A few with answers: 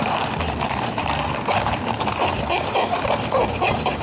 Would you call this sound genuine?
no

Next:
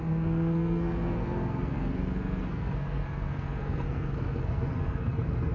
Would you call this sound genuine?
no